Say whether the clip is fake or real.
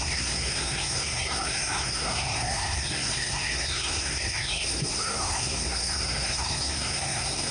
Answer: fake